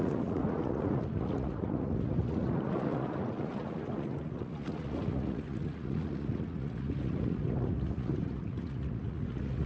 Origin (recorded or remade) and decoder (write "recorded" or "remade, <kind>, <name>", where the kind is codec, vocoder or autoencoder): remade, vocoder, Vocos